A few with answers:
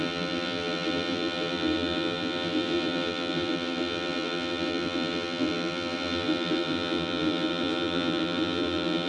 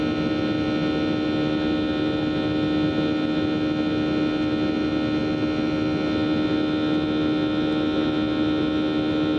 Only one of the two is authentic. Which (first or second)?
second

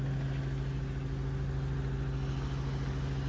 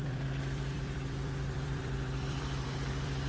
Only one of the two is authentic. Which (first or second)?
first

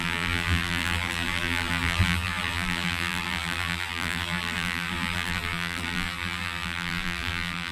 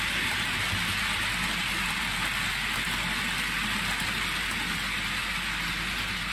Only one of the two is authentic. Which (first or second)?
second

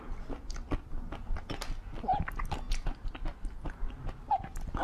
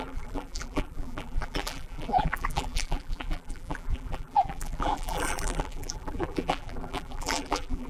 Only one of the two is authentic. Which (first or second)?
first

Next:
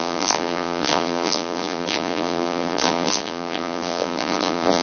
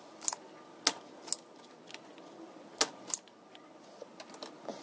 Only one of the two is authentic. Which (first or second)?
second